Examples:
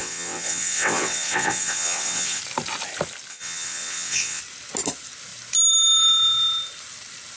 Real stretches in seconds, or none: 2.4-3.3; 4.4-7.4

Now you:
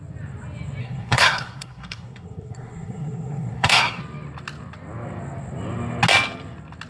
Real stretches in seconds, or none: 0.0-0.8; 4.0-6.9

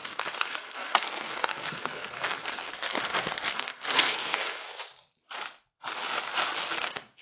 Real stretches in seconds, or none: 4.8-6.7

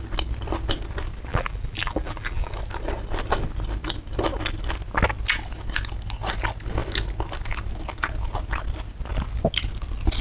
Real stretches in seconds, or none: 0.0-1.3; 2.5-10.2

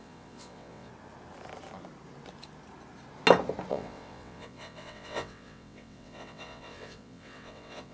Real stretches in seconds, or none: 0.9-3.7

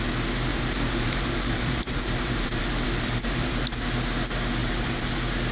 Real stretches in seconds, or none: 0.0-0.5; 3.8-4.6; 5.1-5.5

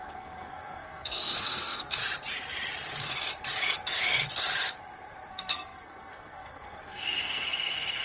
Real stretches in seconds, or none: 2.0-5.3